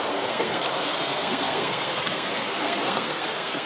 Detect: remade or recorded remade